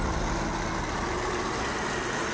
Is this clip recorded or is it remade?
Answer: recorded